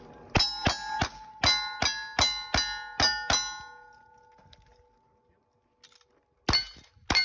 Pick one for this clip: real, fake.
real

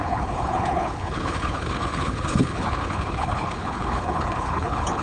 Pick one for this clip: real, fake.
fake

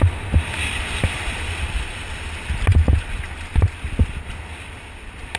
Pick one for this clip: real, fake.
real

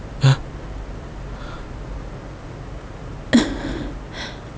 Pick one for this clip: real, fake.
real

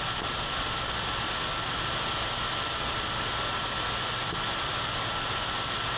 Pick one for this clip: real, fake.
real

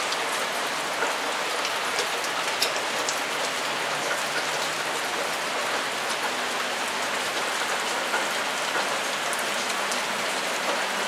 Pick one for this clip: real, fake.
real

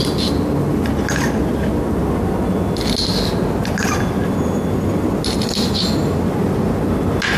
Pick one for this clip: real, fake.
real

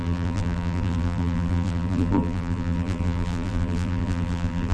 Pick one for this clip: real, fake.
fake